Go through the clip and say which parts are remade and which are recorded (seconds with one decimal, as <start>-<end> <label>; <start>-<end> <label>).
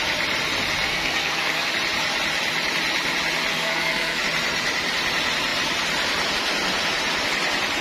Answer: 0.0-0.9 recorded; 0.9-1.7 remade; 1.7-3.5 recorded; 3.5-4.2 remade; 4.2-7.8 recorded